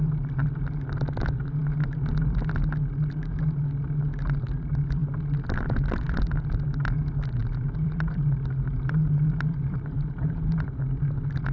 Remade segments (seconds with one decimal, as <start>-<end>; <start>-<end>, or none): 7.4-10.8